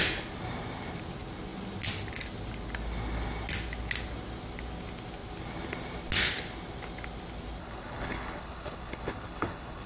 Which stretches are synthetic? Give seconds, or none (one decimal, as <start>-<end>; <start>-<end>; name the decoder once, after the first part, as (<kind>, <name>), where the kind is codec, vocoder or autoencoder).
7.6-9.9 (codec, HILCodec)